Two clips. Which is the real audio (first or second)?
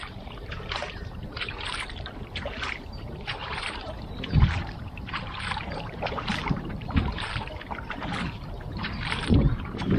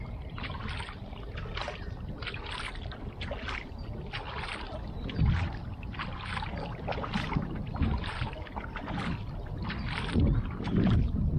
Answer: second